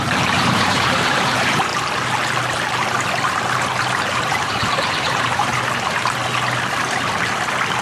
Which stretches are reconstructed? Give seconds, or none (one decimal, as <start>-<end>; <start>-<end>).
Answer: 0.0-1.7; 3.9-5.5